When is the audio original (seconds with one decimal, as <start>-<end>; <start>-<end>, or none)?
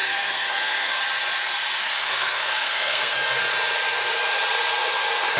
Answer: 1.0-1.8; 3.4-5.4